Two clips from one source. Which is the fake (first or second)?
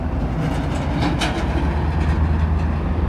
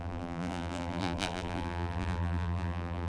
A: second